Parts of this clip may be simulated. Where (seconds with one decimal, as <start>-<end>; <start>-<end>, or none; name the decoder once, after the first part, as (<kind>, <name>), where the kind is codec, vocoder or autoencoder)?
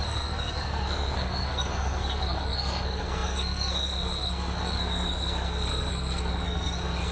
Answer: 0.0-7.1 (codec, SNAC)